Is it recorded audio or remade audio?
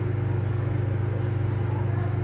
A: recorded